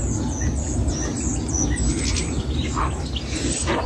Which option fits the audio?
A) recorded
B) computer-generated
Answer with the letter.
A